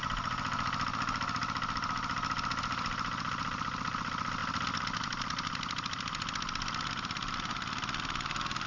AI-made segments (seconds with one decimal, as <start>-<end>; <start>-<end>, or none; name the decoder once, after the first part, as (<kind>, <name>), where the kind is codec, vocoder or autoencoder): 4.4-5.0 (vocoder, BigVGAN v2)